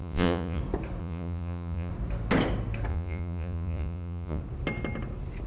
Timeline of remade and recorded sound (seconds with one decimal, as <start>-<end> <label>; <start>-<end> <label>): 0.0-0.6 remade; 0.6-1.0 recorded; 1.0-1.9 remade; 1.9-2.9 recorded; 2.9-4.4 remade; 4.4-5.5 recorded